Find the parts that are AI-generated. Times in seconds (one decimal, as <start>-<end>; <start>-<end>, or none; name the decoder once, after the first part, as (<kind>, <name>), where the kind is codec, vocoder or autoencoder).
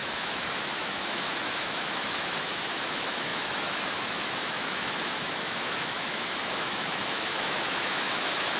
0.0-8.6 (autoencoder, DAC-VAE)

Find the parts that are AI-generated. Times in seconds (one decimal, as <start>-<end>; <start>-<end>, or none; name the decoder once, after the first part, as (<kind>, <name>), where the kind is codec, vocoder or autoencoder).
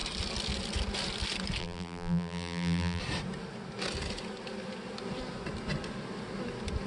1.6-3.0 (vocoder, BigVGAN v2)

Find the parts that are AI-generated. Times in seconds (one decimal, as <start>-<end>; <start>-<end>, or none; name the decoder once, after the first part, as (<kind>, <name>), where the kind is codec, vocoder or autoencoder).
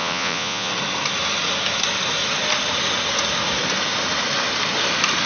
0.0-0.7 (vocoder, Vocos)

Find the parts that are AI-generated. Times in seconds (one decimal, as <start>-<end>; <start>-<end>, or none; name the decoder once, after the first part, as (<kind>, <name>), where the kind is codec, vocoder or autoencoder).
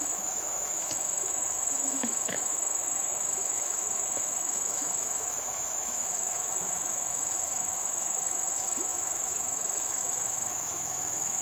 0.0-11.4 (autoencoder, DAC-VAE)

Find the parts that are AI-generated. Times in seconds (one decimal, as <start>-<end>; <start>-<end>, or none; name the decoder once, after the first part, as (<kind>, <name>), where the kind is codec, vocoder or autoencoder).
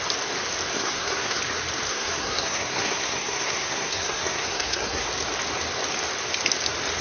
0.7-1.4 (codec, SNAC); 1.9-5.0